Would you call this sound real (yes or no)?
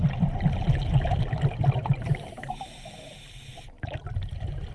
yes